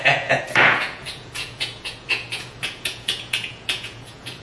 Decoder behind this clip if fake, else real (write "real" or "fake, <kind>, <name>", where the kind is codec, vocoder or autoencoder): fake, vocoder, Vocos